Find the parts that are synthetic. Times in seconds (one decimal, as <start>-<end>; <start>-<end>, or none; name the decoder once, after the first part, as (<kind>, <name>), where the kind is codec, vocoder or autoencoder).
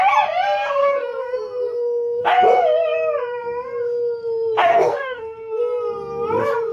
0.8-2.2 (codec, SNAC); 4.7-5.6